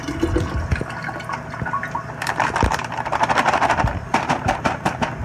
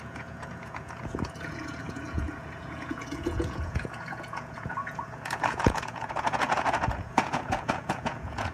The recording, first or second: first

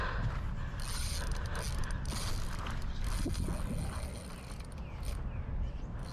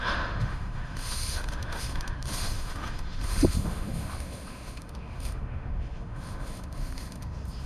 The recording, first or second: first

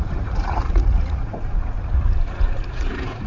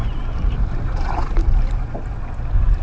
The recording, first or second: second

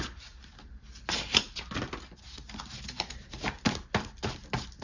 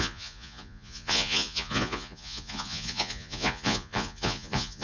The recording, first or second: first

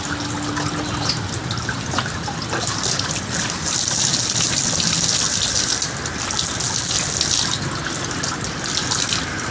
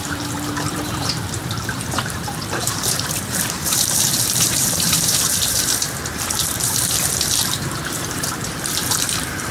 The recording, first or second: first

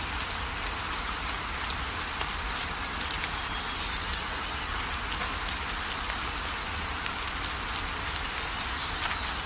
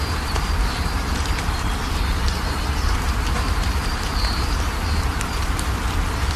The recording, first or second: first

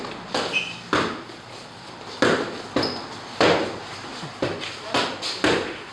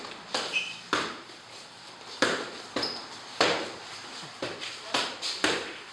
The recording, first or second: first